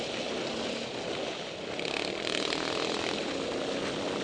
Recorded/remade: recorded